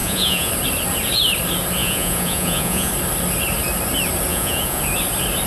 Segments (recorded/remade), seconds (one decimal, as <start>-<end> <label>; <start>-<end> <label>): 0.0-0.5 remade; 0.5-1.8 recorded; 1.8-2.9 remade; 2.9-4.3 recorded; 4.3-4.8 remade; 4.8-5.5 recorded